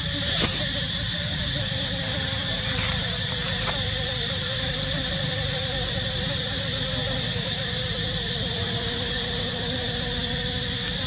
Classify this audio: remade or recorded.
remade